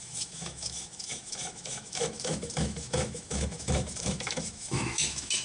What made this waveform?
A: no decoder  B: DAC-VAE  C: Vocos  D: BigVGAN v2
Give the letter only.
B